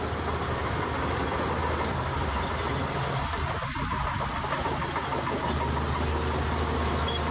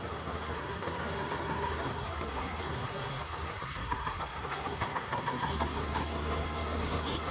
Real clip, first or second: first